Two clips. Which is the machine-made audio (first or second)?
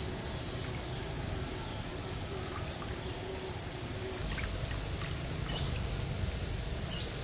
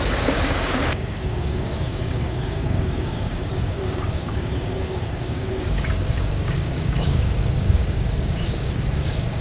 second